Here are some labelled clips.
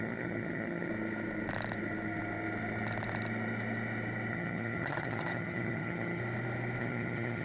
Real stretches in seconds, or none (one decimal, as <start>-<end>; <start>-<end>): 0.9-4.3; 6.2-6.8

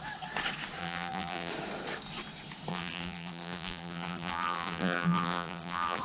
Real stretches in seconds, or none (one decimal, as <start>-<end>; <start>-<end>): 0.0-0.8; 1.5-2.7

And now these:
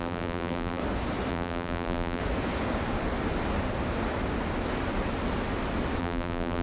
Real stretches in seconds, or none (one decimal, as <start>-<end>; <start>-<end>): 0.8-1.3; 2.2-6.0

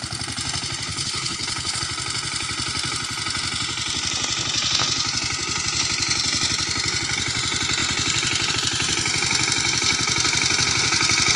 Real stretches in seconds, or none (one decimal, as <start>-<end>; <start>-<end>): 0.0-0.9; 1.8-11.4

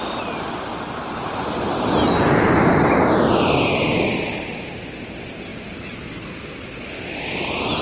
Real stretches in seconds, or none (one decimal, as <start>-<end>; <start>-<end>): 0.0-7.8